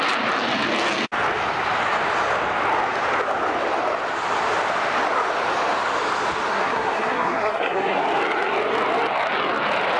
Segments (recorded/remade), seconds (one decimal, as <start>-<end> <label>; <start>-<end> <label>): 0.0-6.5 recorded; 6.5-8.0 remade; 8.0-10.0 recorded